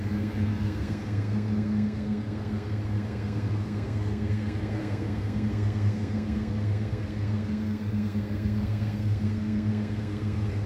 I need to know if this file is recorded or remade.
remade